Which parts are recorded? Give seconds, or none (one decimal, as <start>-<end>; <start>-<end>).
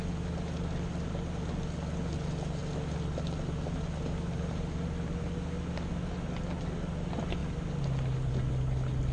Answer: 0.0-9.1